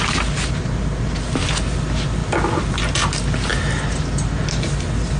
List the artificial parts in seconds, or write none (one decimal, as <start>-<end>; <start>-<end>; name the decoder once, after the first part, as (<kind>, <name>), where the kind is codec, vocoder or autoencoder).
none

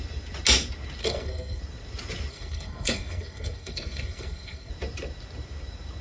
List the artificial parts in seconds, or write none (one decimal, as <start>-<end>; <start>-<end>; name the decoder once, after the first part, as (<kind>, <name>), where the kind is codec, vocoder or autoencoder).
1.0-1.6 (codec, SNAC); 2.3-4.7

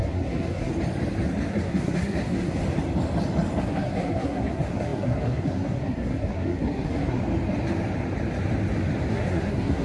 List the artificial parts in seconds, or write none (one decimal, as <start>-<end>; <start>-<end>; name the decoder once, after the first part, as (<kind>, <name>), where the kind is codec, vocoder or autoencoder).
0.0-0.7 (codec, SNAC); 1.5-2.6; 3.6-7.2; 9.1-9.8

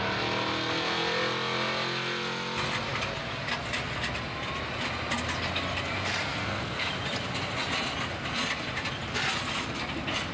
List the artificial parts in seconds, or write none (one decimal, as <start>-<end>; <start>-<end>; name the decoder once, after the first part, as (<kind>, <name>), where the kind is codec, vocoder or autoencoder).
6.3-6.9 (codec, SNAC)

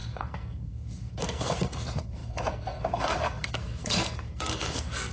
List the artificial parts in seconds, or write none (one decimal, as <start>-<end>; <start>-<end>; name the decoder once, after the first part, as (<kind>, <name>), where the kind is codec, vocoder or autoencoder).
0.0-5.1 (codec, SNAC)